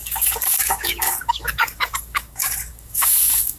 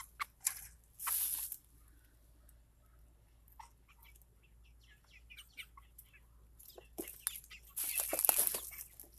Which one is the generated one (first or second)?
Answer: first